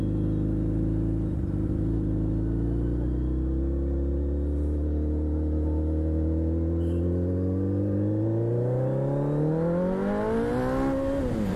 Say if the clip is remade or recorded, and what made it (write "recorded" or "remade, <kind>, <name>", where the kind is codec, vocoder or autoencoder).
recorded